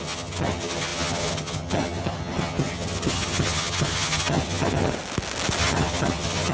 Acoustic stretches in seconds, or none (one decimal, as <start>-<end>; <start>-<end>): 4.9-5.6